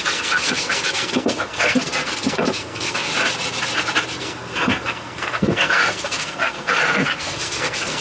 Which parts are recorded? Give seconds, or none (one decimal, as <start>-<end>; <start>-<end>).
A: 3.1-4.2